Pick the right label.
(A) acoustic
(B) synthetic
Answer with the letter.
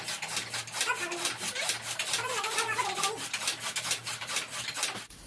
A